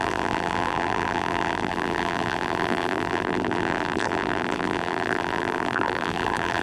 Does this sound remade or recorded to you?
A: remade